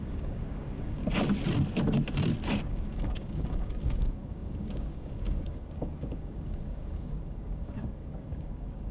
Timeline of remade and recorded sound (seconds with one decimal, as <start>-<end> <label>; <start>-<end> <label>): 0.0-1.0 remade; 1.0-2.7 recorded; 2.7-8.9 remade